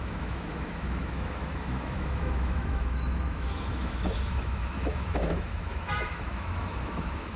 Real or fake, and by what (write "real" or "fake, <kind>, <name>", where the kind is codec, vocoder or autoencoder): fake, autoencoder, DAC-VAE